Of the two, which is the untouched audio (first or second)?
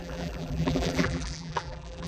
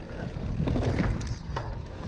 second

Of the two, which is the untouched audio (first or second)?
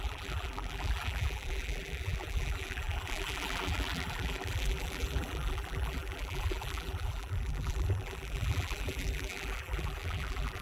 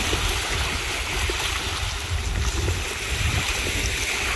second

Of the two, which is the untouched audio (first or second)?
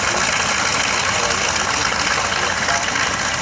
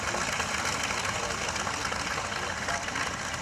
first